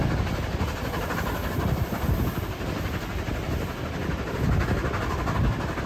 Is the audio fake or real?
real